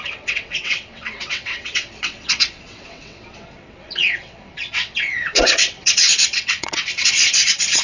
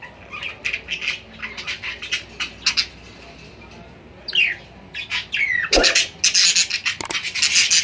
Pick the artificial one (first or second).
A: first